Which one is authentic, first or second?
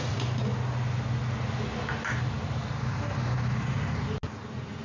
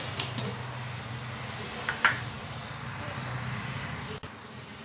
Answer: first